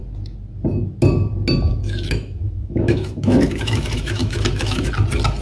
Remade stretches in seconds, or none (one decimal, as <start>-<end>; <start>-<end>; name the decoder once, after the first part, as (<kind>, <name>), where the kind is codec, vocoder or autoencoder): 1.7-4.9 (autoencoder, DAC-VAE)